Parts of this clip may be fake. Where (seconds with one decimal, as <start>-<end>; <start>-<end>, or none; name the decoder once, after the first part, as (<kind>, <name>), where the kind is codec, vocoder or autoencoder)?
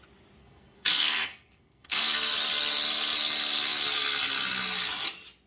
0.4-2.3 (codec, SNAC)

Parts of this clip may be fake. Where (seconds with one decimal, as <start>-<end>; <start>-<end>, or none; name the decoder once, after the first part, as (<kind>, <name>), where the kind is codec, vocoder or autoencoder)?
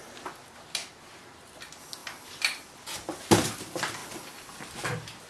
none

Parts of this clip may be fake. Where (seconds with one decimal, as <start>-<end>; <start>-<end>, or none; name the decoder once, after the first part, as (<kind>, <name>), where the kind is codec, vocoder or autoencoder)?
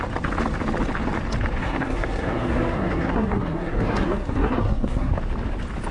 1.6-5.1 (codec, SNAC)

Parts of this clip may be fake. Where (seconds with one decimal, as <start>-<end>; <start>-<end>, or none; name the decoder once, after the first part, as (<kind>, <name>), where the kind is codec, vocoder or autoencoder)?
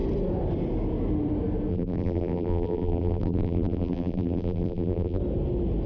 1.7-5.2 (vocoder, BigVGAN v2)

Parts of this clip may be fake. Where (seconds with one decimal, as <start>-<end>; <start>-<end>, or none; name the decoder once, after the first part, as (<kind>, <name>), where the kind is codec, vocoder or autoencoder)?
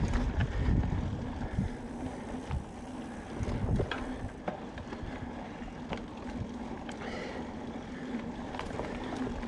0.0-0.4 (vocoder, BigVGAN v2); 1.3-9.5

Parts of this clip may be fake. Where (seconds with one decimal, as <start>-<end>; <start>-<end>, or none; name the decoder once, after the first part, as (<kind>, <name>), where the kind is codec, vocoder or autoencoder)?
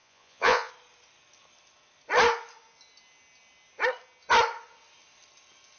0.0-0.7 (vocoder, Vocos)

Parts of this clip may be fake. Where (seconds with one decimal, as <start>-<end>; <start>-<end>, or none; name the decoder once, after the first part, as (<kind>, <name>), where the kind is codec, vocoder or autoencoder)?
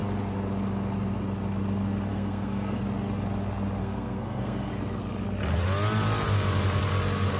2.1-2.8 (codec, SNAC); 3.8-4.7